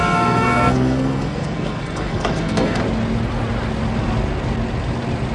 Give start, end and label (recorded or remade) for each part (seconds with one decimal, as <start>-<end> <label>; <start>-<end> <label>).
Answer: 0.0-2.8 remade; 2.8-5.3 recorded